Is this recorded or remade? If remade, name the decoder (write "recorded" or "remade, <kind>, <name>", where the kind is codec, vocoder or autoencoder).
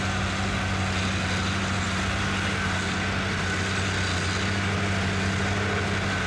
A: recorded